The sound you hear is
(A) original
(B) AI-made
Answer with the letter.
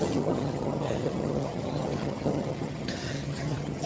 B